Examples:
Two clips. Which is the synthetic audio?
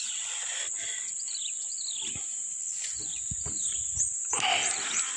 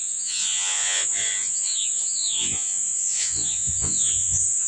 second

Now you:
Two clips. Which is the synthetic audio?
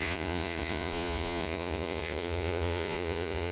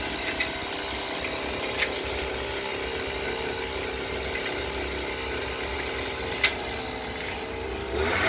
first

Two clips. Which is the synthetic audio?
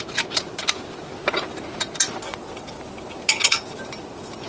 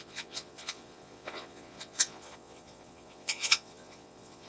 second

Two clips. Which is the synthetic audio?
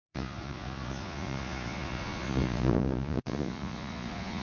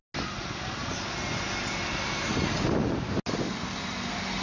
first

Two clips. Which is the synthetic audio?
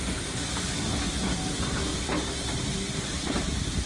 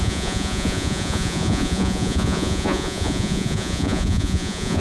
second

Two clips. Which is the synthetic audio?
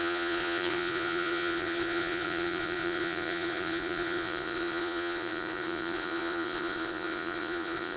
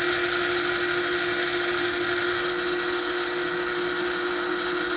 first